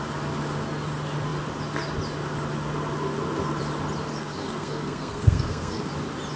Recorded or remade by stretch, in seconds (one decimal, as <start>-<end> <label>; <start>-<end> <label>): 0.0-4.1 recorded; 4.1-5.9 remade; 5.9-6.4 recorded